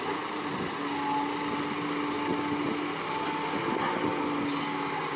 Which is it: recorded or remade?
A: recorded